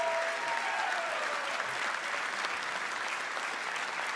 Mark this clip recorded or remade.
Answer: recorded